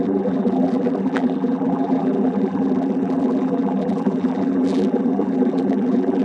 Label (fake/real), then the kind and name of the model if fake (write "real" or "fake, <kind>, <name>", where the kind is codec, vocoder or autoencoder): fake, vocoder, BigVGAN v2